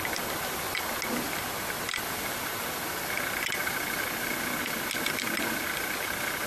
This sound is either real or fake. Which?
real